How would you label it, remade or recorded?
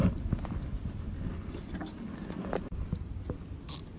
recorded